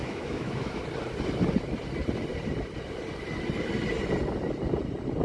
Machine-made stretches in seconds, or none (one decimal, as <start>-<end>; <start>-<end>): 0.0-0.8